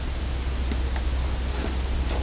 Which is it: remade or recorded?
recorded